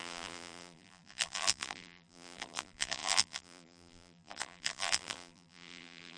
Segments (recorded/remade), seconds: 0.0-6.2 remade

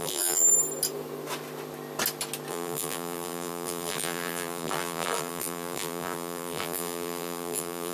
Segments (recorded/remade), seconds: 0.0-0.5 remade; 0.5-2.5 recorded; 2.5-7.9 remade